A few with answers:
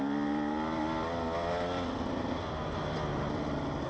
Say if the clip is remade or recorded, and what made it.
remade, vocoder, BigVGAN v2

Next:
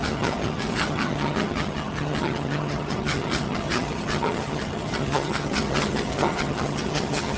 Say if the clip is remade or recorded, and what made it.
remade, vocoder, HiFi-GAN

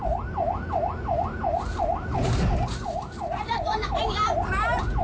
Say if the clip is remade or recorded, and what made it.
recorded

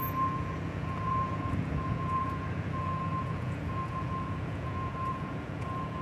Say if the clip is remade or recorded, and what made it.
remade, vocoder, Vocos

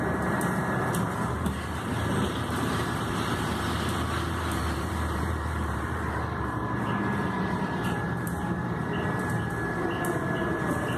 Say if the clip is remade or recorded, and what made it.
remade, vocoder, BigVGAN v2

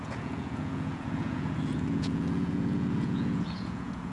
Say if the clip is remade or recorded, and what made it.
remade, vocoder, Vocos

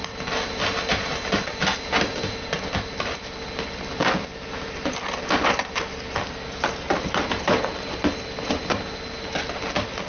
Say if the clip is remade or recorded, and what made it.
recorded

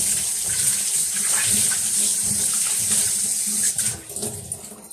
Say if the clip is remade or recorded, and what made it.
recorded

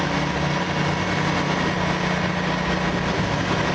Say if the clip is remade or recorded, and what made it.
recorded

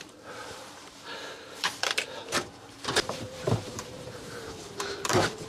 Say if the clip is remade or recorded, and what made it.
remade, vocoder, BigVGAN v2